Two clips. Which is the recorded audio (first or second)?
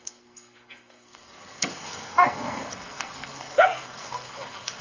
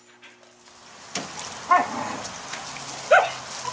second